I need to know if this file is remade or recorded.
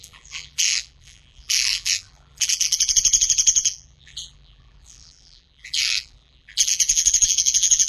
remade